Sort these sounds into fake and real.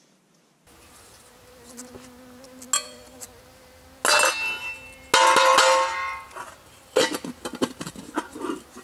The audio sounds real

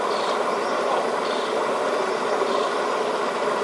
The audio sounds real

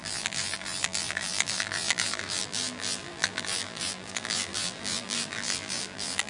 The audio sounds fake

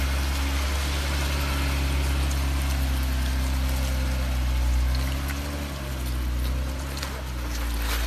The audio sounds real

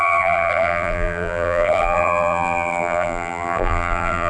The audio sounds fake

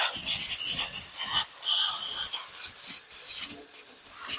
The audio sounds real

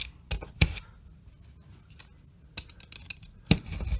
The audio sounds real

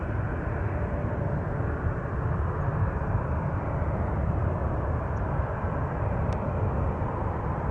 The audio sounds fake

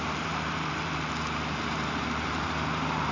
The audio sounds fake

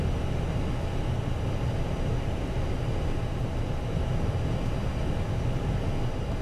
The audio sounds real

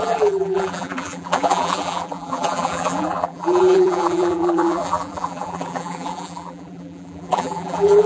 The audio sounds fake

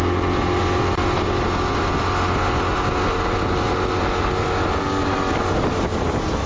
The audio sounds real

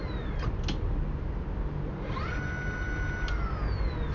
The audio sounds real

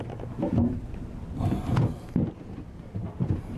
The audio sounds real